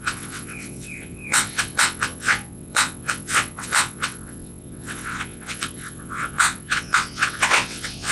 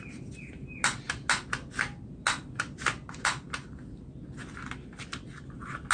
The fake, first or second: first